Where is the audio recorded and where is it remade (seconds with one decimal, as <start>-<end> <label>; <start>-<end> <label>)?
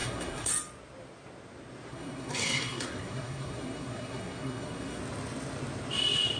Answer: 0.0-0.5 remade; 0.5-1.9 recorded; 1.9-5.0 remade; 5.0-6.4 recorded